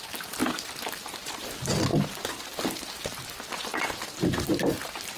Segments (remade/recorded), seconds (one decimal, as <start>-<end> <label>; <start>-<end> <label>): 0.0-5.2 recorded